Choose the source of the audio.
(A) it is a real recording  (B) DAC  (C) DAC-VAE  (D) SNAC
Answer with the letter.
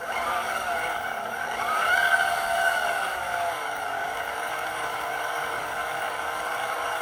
B